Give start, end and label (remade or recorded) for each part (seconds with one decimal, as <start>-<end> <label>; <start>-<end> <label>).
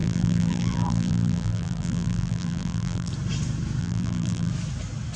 0.0-3.1 remade; 3.1-3.8 recorded; 3.8-4.5 remade; 4.5-5.2 recorded